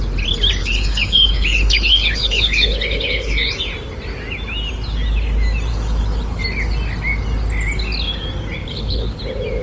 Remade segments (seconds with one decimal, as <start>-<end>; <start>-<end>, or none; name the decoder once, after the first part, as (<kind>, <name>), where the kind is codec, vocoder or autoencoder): 0.6-3.6 (codec, HILCodec); 5.7-6.4; 8.6-9.2